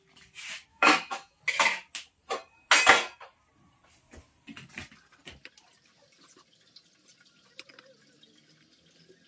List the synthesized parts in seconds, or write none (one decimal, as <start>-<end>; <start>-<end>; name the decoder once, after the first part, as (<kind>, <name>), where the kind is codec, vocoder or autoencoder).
0.7-1.4 (autoencoder, DAC-VAE)

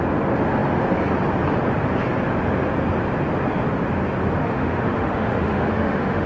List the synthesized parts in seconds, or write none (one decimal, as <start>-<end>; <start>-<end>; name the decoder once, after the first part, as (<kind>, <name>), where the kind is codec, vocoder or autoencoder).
4.4-6.3 (autoencoder, DAC-VAE)

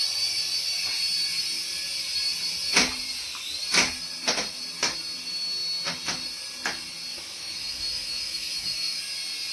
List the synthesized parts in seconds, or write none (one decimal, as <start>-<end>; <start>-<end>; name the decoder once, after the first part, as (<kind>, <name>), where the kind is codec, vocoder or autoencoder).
7.1-9.0 (autoencoder, DAC-VAE)

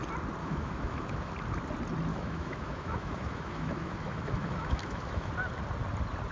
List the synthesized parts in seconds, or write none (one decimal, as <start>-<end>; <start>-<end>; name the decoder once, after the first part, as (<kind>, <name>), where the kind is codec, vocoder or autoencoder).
0.4-1.3 (autoencoder, DAC-VAE); 2.1-5.3

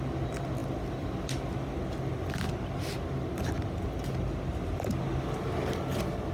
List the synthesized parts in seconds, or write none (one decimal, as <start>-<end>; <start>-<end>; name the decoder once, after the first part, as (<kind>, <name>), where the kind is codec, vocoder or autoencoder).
none

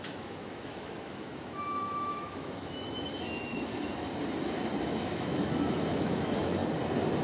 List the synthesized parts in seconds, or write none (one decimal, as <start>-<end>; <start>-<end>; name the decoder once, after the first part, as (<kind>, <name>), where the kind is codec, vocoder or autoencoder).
0.0-3.7 (autoencoder, DAC-VAE); 4.8-6.6

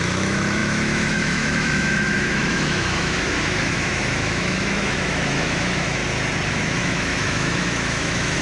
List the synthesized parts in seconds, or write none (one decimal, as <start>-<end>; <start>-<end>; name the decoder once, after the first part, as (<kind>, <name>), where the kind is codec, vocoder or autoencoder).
0.0-6.0 (autoencoder, DAC-VAE); 6.5-8.4